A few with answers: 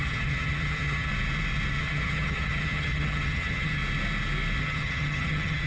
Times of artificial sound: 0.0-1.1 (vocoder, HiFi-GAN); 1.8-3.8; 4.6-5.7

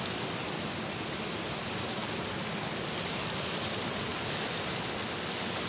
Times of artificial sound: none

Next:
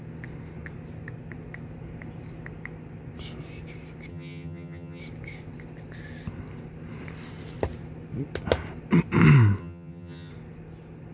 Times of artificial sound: 4.1-5.0 (vocoder, HiFi-GAN); 9.6-10.3

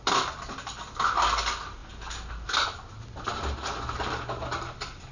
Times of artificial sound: none